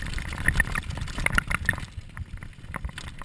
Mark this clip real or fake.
real